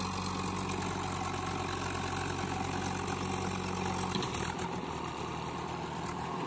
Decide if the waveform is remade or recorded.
recorded